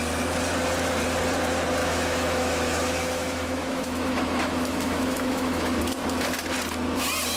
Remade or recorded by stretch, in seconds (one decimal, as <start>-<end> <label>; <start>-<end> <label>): 0.0-1.8 recorded; 1.8-5.8 remade; 5.8-7.4 recorded